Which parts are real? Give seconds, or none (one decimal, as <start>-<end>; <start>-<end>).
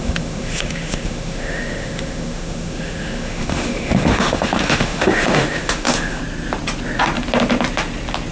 6.2-8.3